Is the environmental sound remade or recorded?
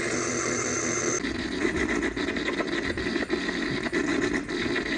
recorded